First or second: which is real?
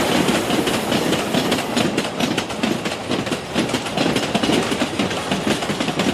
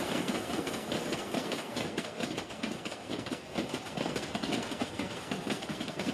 first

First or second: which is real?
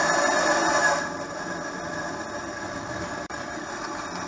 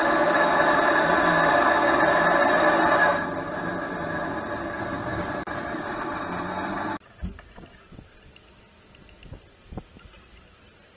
second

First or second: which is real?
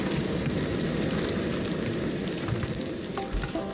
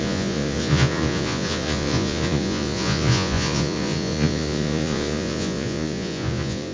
first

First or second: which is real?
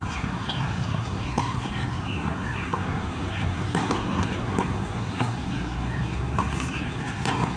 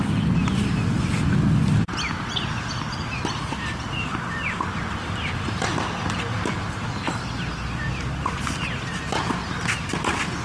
second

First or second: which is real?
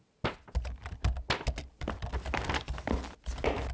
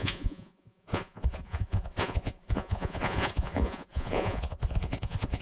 first